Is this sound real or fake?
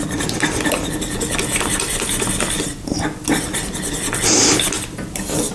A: real